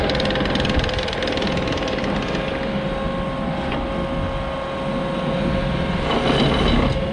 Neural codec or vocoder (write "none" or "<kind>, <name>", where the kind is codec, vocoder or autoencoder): none